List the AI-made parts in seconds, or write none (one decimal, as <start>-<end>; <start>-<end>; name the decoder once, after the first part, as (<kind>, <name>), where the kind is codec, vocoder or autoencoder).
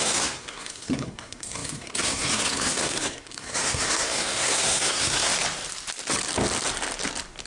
0.0-5.3 (codec, SNAC)